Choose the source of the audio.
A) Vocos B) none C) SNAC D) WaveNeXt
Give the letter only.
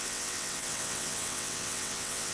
D